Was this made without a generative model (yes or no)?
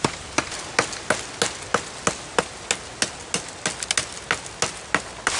yes